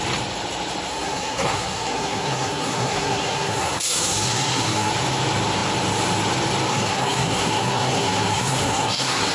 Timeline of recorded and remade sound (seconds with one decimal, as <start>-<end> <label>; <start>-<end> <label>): 0.0-0.9 recorded; 0.9-4.9 remade; 4.9-6.7 recorded; 6.7-9.3 remade